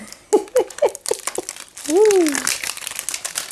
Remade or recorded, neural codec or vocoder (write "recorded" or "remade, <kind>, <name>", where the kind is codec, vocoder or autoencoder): recorded